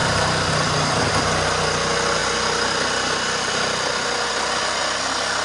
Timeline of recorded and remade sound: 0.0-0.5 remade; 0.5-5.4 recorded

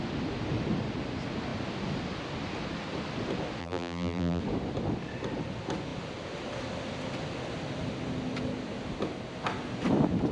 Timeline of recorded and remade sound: 0.0-3.6 recorded; 3.6-4.4 remade; 4.4-10.3 recorded

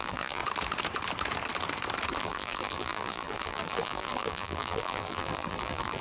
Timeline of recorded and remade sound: 0.0-0.4 remade; 0.4-2.2 recorded; 2.2-6.0 remade

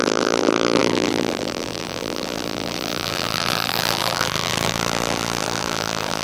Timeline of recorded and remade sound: 0.0-6.2 remade

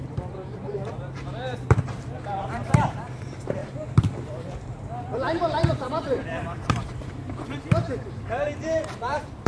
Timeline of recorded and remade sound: 0.0-9.5 remade

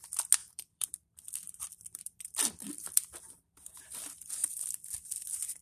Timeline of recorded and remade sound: 0.0-0.4 recorded; 0.4-3.8 remade; 3.8-4.4 recorded; 4.4-5.6 remade

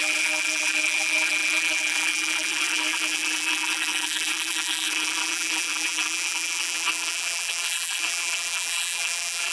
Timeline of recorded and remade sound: 0.0-9.5 remade

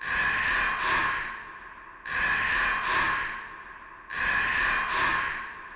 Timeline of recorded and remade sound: 0.0-4.1 recorded; 4.1-5.8 remade